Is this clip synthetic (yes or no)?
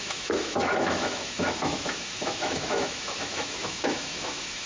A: yes